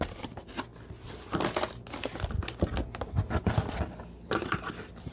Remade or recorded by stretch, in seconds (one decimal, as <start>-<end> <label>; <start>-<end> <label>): 0.0-5.1 recorded